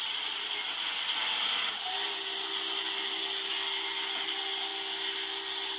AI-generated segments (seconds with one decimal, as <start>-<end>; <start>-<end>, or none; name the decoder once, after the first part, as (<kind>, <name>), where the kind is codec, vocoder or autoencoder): none